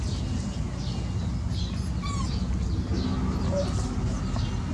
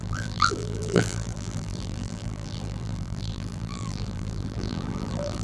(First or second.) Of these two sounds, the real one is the first